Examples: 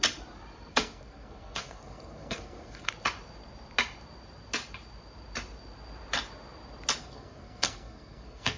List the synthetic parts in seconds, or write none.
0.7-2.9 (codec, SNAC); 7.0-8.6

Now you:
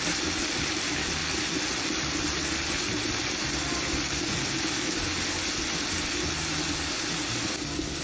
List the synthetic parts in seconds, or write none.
none

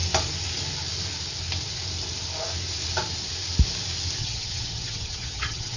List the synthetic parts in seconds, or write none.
4.2-5.8 (vocoder, HiFi-GAN)

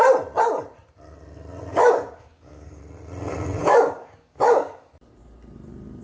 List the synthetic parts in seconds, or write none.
1.7-2.8 (codec, DAC); 3.6-4.9